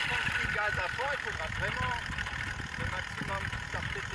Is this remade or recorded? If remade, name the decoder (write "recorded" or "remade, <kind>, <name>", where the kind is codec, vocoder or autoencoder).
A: recorded